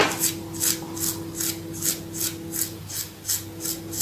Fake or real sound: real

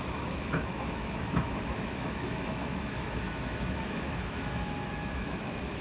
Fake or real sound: fake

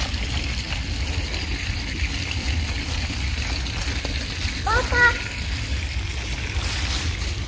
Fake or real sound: real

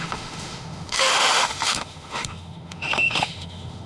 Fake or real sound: fake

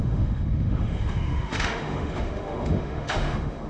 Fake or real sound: fake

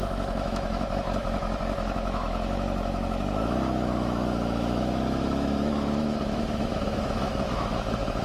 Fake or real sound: fake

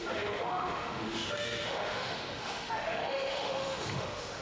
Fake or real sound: fake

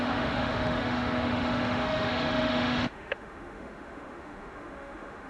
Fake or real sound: fake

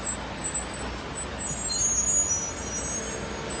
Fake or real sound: real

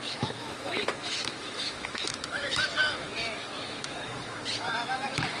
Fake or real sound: fake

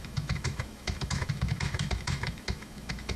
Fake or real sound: fake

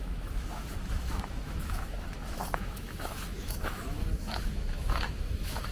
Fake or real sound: fake